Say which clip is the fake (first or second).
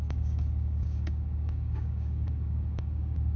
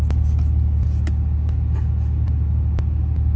first